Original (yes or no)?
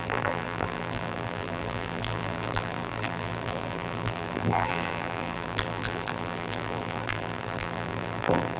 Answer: no